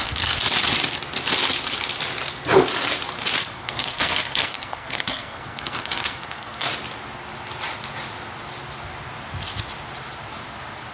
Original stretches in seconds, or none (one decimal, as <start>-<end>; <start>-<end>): 0.4-3.4; 6.7-10.9